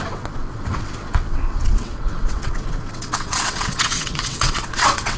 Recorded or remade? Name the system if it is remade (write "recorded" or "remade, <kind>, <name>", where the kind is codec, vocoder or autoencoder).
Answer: remade, vocoder, WaveNeXt